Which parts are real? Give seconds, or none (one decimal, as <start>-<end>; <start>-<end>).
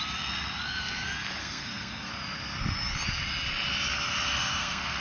0.0-1.4; 2.1-4.4